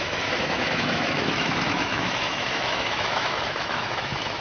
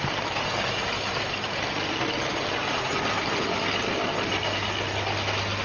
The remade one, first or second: first